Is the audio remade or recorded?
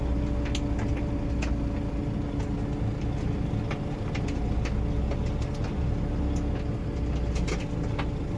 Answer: recorded